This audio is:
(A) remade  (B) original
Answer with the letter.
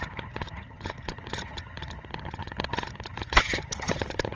A